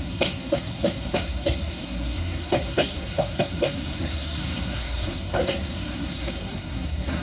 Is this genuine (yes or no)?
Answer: no